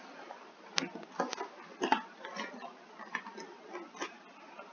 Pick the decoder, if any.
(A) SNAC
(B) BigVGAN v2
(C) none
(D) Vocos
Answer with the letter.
C